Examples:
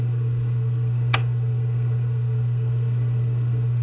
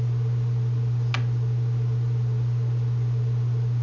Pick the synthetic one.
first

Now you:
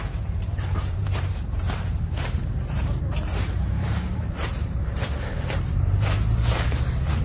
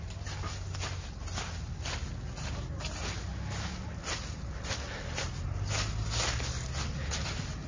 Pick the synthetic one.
first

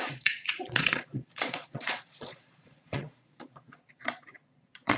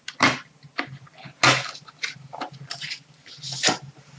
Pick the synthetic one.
first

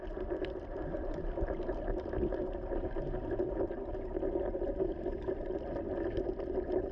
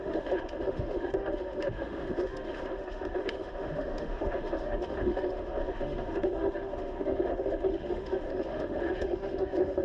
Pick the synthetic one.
second